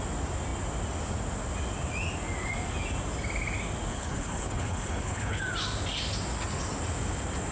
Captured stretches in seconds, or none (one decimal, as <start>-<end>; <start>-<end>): 0.0-3.9; 5.4-7.5